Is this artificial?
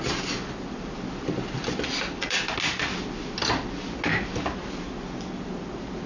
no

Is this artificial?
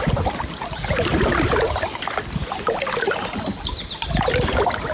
no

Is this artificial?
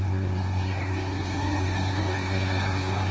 yes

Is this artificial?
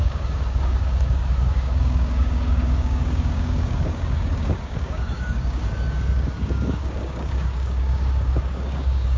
yes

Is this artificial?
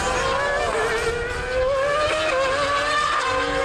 no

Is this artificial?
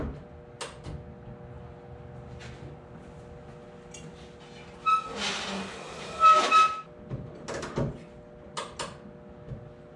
no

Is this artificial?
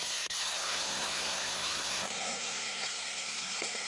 yes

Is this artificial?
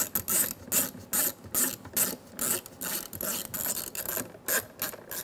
no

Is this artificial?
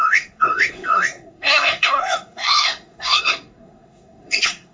yes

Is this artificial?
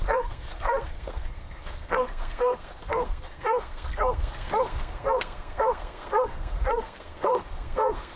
yes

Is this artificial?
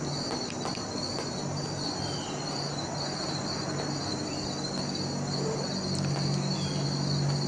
no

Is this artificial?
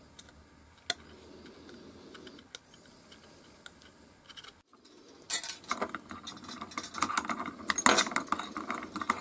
no